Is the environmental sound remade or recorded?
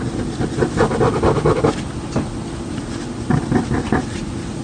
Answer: recorded